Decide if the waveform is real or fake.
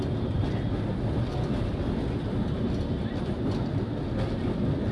real